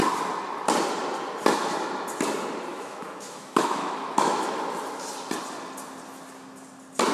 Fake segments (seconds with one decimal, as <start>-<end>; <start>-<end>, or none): 2.7-4.6